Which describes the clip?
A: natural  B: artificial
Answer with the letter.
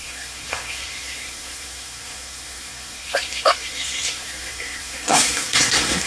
B